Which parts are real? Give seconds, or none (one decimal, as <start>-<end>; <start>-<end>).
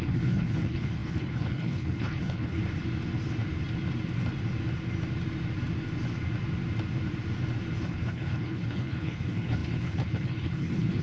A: 2.6-7.8